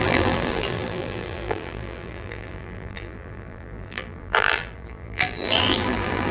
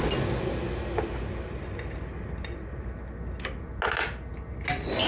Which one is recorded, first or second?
second